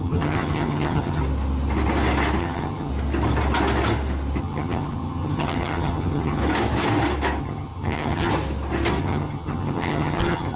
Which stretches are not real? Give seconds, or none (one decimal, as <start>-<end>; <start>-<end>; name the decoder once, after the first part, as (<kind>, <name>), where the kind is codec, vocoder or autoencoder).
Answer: 0.0-1.2 (vocoder, HiFi-GAN); 2.4-2.9; 4.4-6.4; 7.4-8.3; 9.0-10.6